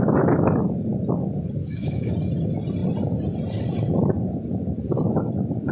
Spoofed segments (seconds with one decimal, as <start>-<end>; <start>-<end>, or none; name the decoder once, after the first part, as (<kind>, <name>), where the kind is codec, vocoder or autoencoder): 1.6-2.1 (autoencoder, DAC-VAE)